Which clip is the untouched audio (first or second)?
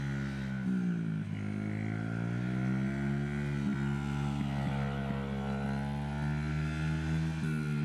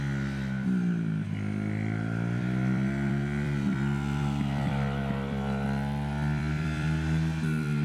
first